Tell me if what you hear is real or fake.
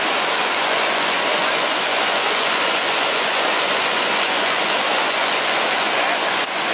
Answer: fake